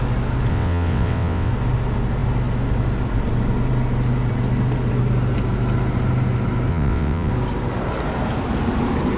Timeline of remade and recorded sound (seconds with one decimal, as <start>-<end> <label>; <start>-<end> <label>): 0.0-0.5 recorded; 0.5-1.5 remade; 1.5-6.7 recorded; 6.7-7.3 remade; 7.3-9.2 recorded